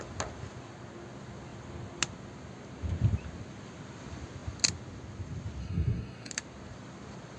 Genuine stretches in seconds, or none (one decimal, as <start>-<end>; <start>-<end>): 0.0-5.6; 6.3-7.4